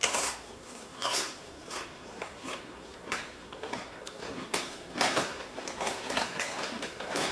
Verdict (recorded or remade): remade